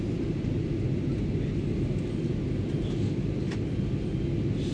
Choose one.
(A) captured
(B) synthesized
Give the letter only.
A